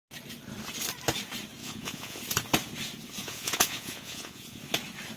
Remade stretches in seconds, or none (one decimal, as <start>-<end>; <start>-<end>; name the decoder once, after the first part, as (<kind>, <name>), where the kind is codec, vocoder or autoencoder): 1.6-2.2 (vocoder, Vocos); 3.2-4.6